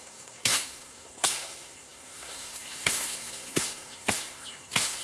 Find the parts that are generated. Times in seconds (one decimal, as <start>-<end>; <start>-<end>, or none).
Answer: 0.0-5.0